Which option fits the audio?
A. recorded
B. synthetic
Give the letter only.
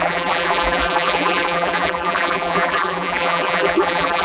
B